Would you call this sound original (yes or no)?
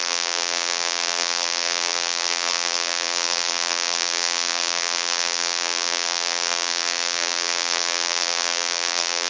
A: no